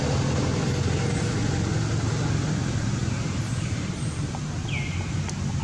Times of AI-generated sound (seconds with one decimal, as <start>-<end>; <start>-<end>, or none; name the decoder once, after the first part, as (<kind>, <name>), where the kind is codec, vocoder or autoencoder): 3.0-4.7 (vocoder, BigVGAN v2)